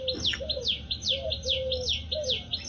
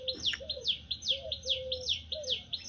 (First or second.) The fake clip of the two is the second